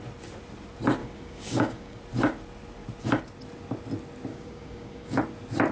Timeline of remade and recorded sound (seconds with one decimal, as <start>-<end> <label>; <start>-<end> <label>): 0.0-1.0 recorded; 1.0-2.0 remade; 2.0-4.3 recorded; 4.3-5.2 remade; 5.2-5.7 recorded